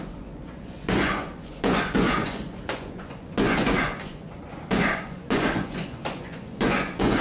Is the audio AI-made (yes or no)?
yes